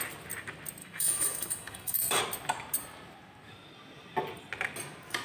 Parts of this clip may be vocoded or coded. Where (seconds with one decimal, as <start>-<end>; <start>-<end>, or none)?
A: 0.8-2.2